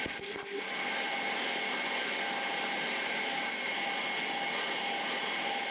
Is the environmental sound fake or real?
real